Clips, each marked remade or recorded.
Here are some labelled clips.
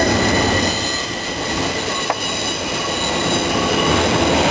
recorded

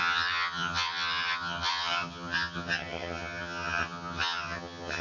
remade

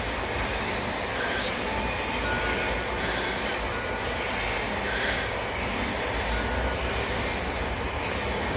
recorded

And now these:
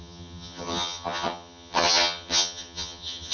remade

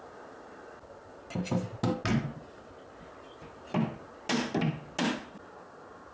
recorded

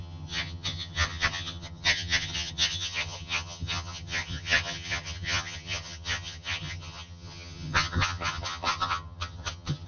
remade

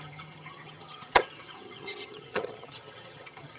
remade